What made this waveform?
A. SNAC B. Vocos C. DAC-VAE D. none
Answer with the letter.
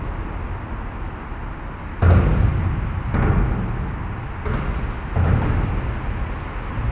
D